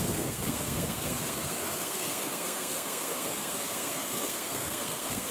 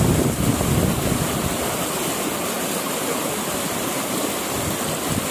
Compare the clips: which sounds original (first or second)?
second